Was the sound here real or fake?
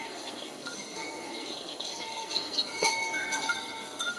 fake